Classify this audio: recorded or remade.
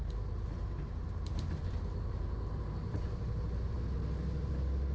recorded